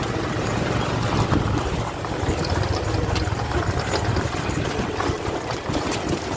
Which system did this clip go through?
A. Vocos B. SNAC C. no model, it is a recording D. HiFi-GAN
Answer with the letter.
C